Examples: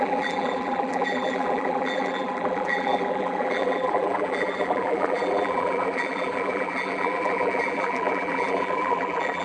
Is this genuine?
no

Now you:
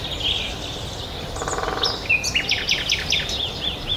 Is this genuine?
yes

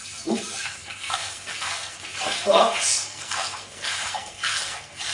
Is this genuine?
no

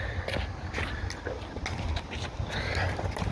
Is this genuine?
yes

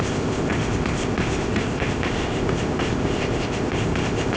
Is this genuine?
no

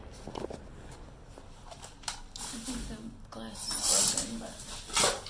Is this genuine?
yes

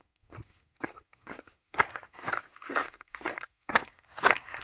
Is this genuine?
no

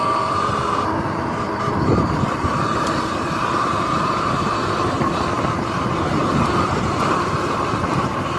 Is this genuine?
no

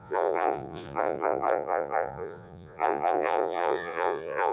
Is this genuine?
no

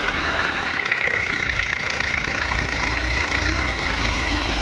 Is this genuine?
no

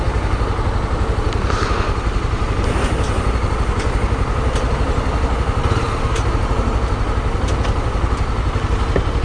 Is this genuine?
yes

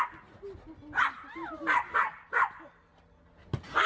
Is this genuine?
yes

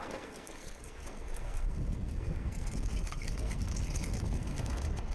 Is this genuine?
no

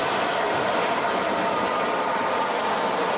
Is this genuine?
yes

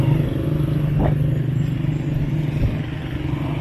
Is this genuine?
yes